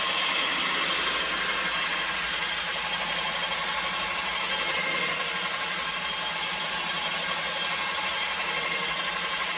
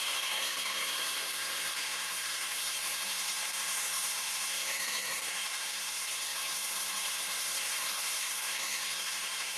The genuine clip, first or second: first